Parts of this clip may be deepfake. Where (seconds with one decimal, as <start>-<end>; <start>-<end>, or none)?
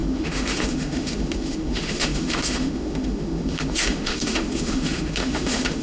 0.0-5.8